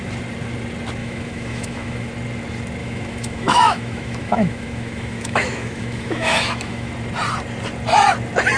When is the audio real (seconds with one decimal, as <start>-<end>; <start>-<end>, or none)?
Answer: 0.0-1.0; 2.1-2.8; 6.9-8.6